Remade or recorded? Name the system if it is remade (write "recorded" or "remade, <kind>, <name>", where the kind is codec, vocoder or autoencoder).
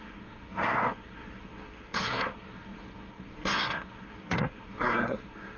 remade, codec, SNAC